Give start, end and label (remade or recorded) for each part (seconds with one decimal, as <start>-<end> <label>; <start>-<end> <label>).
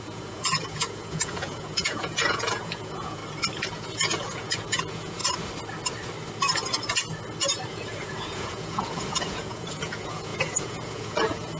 0.0-3.2 remade; 3.2-3.7 recorded; 3.7-5.2 remade; 5.2-7.7 recorded; 7.7-11.6 remade